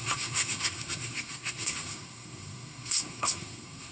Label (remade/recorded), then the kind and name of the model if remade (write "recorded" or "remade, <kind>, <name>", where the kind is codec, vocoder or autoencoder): remade, codec, SNAC